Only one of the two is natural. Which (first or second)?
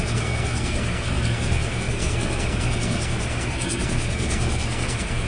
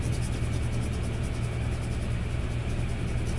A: second